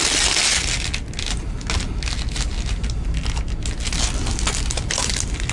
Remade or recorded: recorded